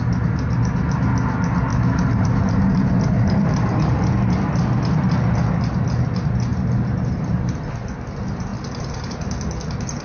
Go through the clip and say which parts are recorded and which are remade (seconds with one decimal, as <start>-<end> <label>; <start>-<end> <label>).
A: 0.0-1.7 recorded; 1.7-4.0 remade; 4.0-6.5 recorded; 6.5-7.5 remade; 7.5-8.5 recorded; 8.5-9.1 remade; 9.1-10.0 recorded